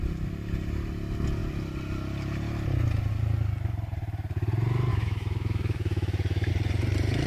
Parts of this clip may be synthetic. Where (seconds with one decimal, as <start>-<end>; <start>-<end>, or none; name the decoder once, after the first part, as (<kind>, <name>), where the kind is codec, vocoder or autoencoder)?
4.9-6.5 (autoencoder, DAC-VAE)